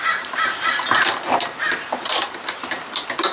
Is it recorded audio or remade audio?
recorded